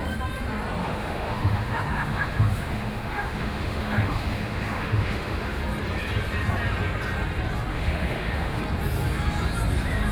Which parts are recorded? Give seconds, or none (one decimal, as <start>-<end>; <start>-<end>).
0.0-0.8; 5.6-7.7; 8.6-10.1